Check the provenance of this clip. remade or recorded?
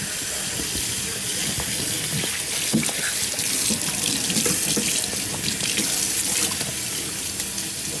recorded